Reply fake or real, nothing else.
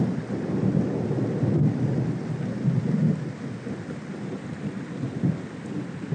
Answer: real